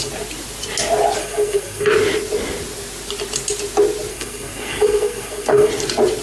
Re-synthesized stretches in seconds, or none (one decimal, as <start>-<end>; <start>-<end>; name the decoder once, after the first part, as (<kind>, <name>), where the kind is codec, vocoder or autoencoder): 1.2-1.9 (codec, SNAC); 4.1-5.7